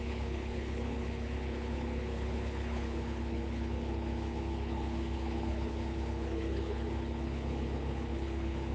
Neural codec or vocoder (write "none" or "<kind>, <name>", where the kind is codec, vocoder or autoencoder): codec, HILCodec